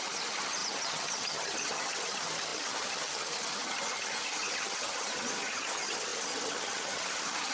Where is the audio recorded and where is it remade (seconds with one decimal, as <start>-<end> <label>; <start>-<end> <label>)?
0.0-7.5 remade